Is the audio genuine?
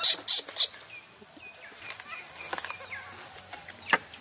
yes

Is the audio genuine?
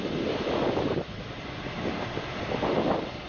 no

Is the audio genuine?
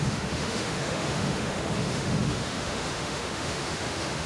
no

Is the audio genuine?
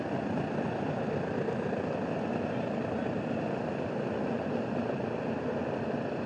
yes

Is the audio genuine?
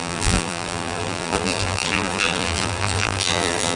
no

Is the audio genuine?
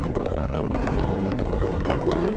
no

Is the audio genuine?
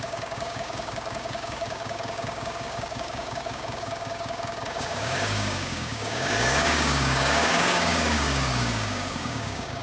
no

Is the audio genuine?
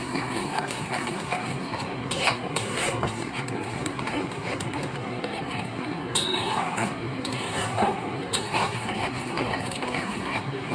no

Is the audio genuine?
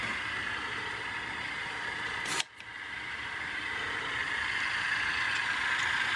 yes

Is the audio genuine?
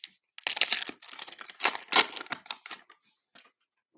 yes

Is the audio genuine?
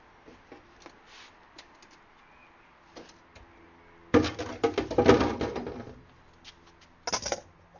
yes